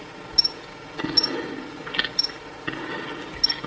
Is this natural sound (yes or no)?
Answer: yes